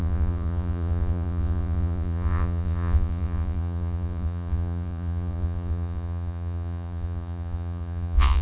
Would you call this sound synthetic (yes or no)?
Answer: yes